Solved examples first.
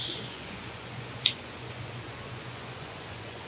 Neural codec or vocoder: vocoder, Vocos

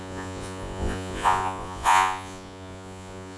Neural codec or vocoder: vocoder, Vocos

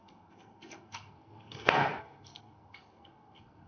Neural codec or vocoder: codec, SNAC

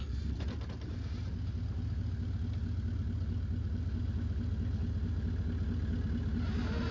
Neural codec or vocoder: none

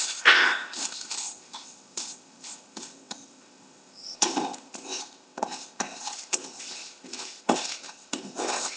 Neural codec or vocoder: codec, ZipCodec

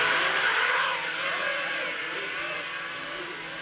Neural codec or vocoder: none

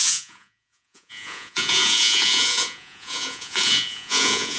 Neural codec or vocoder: vocoder, Vocos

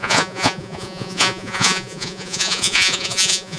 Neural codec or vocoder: vocoder, Vocos